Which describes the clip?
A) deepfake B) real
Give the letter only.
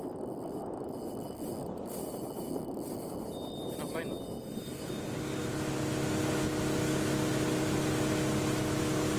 B